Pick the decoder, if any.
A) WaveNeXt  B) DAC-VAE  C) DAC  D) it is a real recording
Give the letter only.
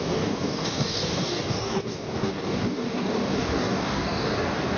C